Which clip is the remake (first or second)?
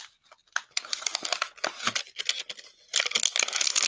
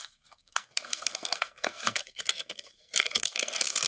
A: second